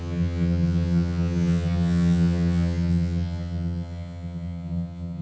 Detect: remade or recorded remade